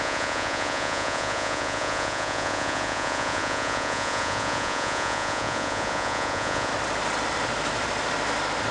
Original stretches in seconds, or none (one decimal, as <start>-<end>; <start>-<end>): 6.7-8.7